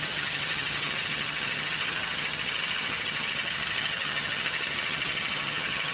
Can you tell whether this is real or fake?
fake